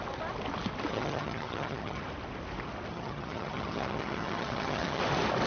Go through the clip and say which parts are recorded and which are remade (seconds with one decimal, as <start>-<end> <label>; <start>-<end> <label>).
0.0-0.9 recorded; 0.9-2.0 remade; 2.0-2.9 recorded; 2.9-5.0 remade; 5.0-5.5 recorded